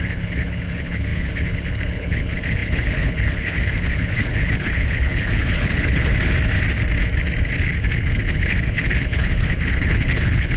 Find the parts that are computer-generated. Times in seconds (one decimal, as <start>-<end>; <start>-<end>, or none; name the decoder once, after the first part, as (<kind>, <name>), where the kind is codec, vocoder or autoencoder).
0.0-6.1 (codec, HILCodec); 7.6-10.6